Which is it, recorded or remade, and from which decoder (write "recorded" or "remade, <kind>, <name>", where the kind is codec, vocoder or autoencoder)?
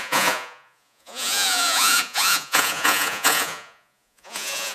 remade, vocoder, Vocos